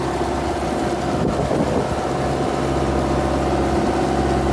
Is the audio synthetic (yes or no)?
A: no